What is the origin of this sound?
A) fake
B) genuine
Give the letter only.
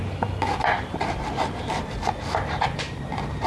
A